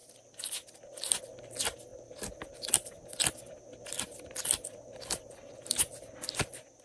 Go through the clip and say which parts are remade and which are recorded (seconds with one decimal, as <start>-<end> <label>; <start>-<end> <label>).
0.0-6.8 recorded